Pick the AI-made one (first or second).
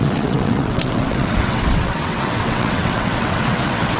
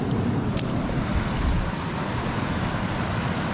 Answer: first